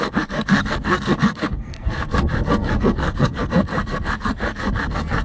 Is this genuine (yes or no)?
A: no